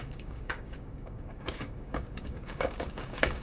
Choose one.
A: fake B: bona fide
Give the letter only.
A